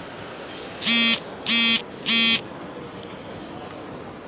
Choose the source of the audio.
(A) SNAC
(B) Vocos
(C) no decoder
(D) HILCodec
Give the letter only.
C